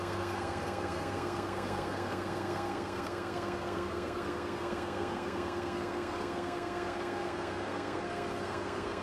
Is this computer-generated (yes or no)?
yes